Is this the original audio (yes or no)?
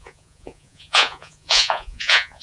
no